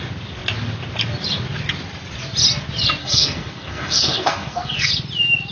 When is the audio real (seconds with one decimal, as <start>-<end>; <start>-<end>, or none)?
0.0-3.0; 4.9-5.5